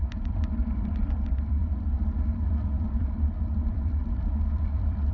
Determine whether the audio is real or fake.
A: fake